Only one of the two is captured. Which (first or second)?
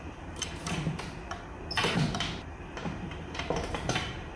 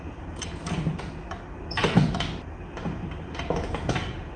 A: second